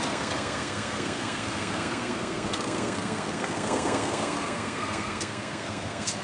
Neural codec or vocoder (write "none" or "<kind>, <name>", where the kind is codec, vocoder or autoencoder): codec, SNAC